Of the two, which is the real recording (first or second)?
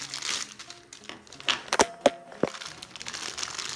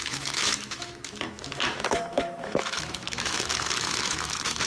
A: first